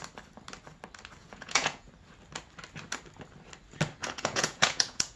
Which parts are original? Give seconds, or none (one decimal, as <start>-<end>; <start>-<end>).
0.0-1.2; 1.9-4.0